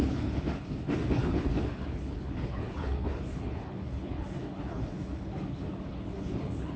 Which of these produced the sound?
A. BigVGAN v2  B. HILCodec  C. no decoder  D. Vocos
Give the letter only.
B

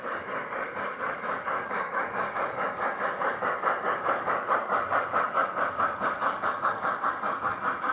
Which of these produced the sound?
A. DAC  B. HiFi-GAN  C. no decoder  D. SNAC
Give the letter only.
A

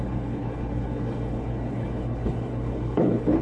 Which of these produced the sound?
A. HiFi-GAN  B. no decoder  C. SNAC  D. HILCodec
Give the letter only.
D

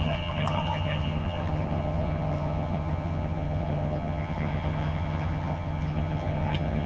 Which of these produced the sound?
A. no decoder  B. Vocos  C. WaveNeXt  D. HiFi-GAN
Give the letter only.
D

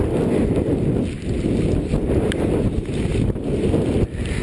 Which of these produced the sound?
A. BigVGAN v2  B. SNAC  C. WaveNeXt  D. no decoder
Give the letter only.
D